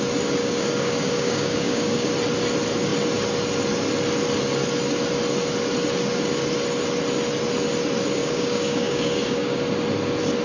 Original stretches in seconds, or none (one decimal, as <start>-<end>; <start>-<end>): 0.0-0.4; 2.1-8.2; 9.6-10.4